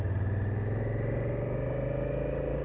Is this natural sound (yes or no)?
yes